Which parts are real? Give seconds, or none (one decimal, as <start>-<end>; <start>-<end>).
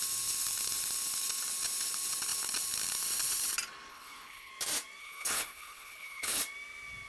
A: 0.0-3.9; 4.5-5.0; 6.4-7.1